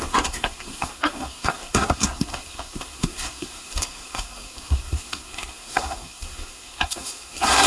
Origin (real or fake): fake